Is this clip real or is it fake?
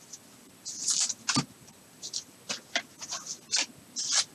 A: real